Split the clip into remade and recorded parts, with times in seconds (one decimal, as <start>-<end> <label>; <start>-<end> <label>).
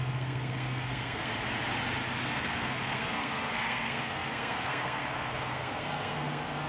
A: 0.0-1.3 remade; 1.3-2.2 recorded; 2.2-6.7 remade